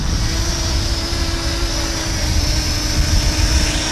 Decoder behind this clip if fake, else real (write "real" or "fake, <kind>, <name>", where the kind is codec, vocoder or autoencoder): real